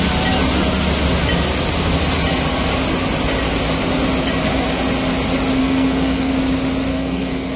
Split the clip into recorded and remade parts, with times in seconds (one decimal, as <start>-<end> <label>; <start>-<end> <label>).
0.0-5.6 recorded; 5.6-6.3 remade; 6.3-6.9 recorded; 6.9-7.6 remade